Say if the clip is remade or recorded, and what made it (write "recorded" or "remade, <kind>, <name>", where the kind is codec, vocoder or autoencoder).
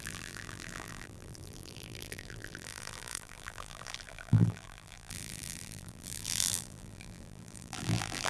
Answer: remade, vocoder, BigVGAN v2